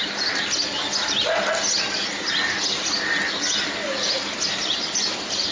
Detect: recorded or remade recorded